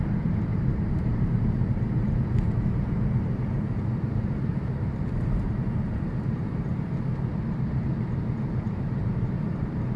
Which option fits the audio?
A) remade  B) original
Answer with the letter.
A